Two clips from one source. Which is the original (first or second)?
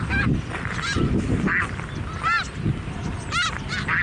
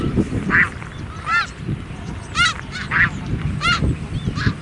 first